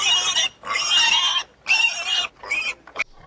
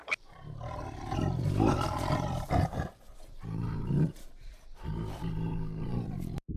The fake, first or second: second